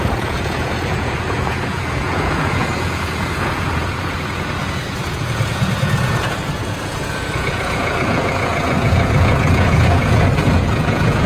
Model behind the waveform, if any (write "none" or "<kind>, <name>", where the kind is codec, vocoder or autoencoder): vocoder, Vocos